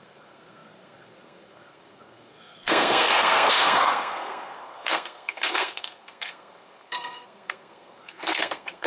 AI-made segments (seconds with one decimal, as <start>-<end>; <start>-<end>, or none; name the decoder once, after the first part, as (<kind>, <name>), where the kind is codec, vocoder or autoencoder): 0.0-8.9 (codec, SNAC)